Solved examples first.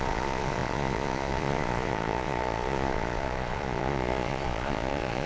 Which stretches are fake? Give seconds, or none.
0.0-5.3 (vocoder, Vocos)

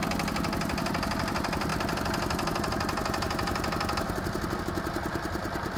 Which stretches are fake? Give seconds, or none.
none

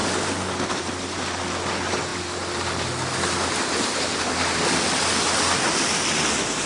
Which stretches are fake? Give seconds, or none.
none

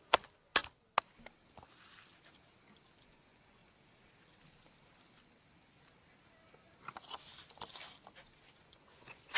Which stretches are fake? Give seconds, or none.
0.0-0.5 (vocoder, Vocos); 3.0-3.6; 8.6-9.4